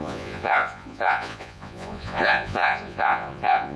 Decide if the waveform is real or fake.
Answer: fake